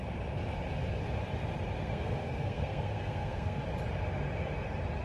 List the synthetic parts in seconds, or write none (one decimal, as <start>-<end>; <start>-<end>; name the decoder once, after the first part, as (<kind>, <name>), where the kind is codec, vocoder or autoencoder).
1.8-3.6 (codec, SNAC)